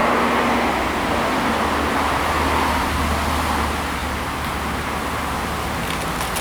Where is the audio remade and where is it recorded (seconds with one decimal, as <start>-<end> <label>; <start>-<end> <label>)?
0.0-6.4 recorded

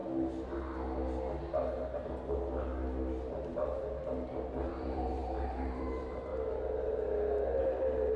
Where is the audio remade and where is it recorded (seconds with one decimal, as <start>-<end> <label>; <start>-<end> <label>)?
0.0-4.7 recorded; 4.7-6.3 remade; 6.3-7.6 recorded; 7.6-8.2 remade

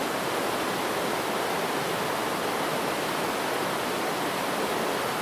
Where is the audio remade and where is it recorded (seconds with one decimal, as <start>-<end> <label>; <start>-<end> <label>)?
0.0-5.2 recorded

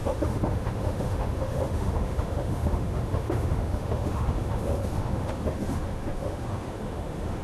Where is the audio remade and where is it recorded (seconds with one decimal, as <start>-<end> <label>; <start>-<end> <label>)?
0.0-7.4 remade

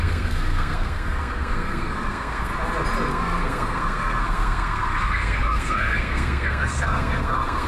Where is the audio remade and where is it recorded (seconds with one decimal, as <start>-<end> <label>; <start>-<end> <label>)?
0.0-2.5 remade; 2.5-3.1 recorded; 3.1-7.7 remade

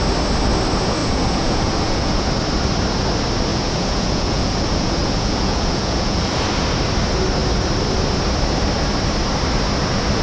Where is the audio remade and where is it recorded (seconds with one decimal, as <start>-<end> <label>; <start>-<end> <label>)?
0.0-1.0 recorded; 1.0-2.3 remade; 2.3-3.5 recorded; 3.5-6.4 remade; 6.4-10.2 recorded

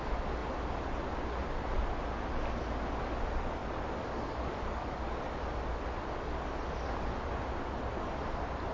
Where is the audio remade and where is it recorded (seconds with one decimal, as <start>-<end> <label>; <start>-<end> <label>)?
0.0-3.6 recorded; 3.6-5.0 remade; 5.0-8.7 recorded